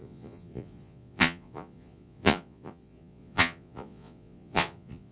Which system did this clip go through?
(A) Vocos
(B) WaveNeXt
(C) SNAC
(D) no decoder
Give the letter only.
A